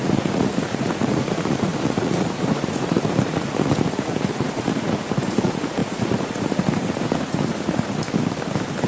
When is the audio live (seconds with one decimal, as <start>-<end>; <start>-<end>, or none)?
8.0-8.9